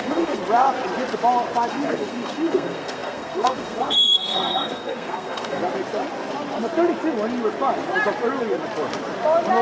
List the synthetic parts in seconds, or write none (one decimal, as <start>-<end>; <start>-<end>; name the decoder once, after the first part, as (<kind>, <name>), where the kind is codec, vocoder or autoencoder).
0.0-0.4 (codec, SNAC); 1.7-5.6